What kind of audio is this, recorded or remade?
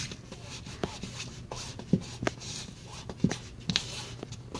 recorded